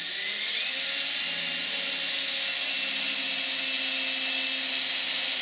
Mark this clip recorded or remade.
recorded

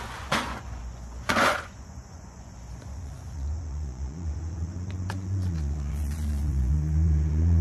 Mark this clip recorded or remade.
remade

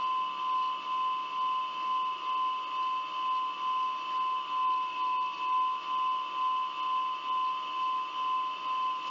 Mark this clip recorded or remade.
recorded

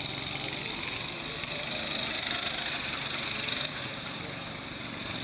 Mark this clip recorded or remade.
recorded